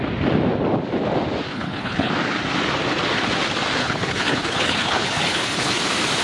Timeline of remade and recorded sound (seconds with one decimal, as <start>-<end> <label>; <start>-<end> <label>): 0.0-1.5 recorded; 1.5-2.1 remade; 2.1-3.8 recorded; 3.8-5.8 remade; 5.8-6.2 recorded